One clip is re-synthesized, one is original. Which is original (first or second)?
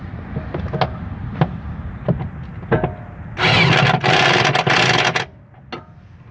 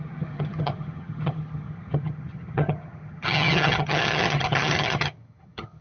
first